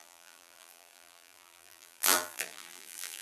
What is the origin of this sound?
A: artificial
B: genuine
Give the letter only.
A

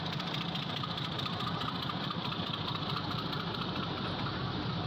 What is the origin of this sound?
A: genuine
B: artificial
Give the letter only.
B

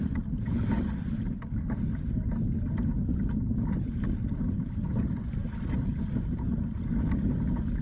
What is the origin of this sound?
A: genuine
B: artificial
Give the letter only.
A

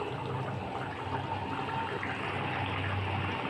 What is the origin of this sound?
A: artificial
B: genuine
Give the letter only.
B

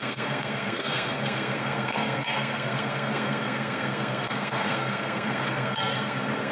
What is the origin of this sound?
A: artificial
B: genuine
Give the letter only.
A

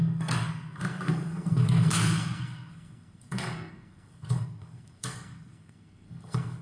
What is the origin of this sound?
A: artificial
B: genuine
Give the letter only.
A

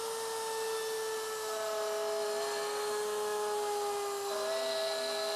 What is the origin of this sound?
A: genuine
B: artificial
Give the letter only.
A